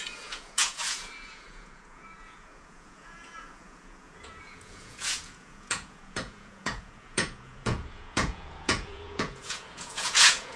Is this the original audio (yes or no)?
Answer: no